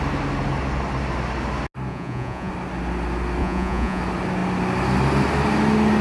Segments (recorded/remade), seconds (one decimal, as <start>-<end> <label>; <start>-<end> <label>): 0.0-1.9 recorded; 1.9-2.5 remade; 2.5-3.4 recorded; 3.4-4.0 remade; 4.0-6.0 recorded